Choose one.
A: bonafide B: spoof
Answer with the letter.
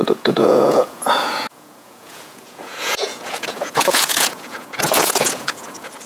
B